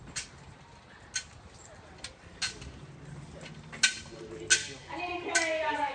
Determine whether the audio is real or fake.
real